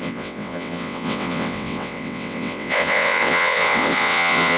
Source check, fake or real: fake